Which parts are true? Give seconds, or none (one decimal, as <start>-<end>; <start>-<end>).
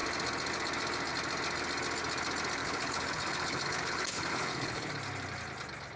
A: 0.0-2.6; 4.9-6.0